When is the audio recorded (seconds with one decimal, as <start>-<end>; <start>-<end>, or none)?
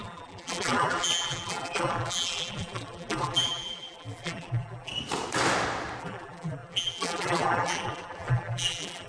4.9-6.0